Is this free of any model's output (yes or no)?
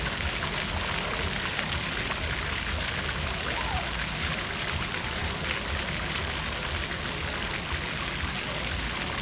yes